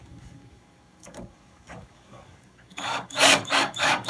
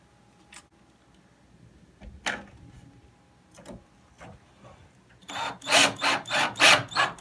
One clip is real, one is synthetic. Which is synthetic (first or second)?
first